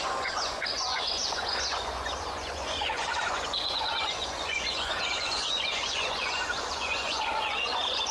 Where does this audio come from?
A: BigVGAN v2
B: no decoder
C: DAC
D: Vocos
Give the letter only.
D